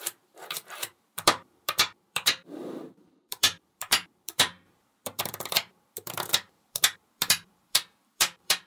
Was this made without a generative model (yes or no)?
no